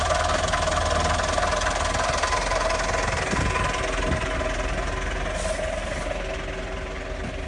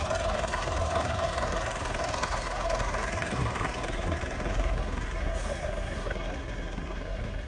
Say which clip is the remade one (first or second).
second